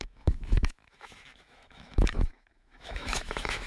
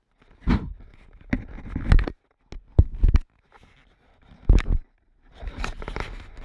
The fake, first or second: first